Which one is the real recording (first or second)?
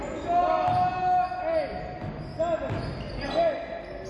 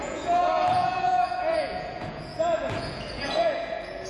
first